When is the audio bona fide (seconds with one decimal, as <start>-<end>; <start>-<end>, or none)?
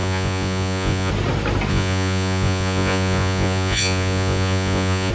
1.1-1.7